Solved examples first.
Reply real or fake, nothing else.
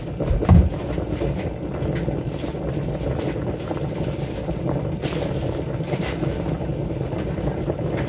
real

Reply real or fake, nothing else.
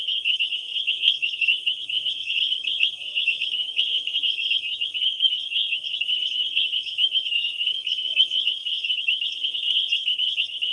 fake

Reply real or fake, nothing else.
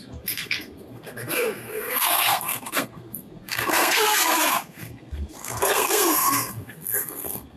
fake